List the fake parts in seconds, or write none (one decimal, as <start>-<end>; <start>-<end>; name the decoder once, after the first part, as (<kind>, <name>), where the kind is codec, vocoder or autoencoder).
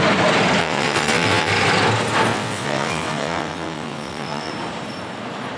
0.6-1.5 (vocoder, WaveNeXt); 2.3-4.5